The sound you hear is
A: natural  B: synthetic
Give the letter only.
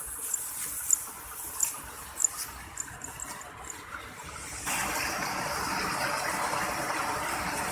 A